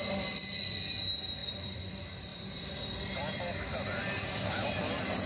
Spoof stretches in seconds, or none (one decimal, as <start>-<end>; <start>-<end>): 1.4-1.9; 2.3-5.3